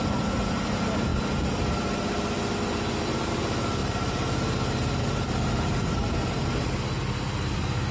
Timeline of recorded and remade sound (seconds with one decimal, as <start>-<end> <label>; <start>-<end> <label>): 0.0-7.9 recorded